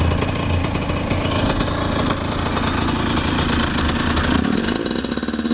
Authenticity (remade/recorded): recorded